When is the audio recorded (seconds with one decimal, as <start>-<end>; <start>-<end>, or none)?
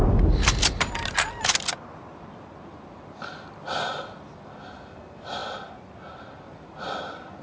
0.0-7.4